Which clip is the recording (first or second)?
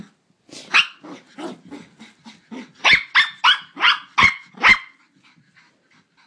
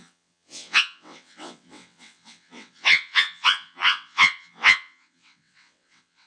first